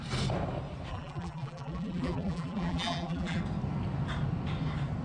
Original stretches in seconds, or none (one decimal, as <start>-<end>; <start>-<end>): 0.0-0.9; 3.4-5.0